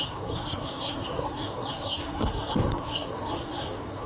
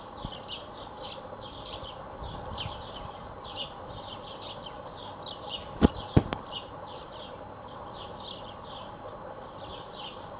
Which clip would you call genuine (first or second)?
second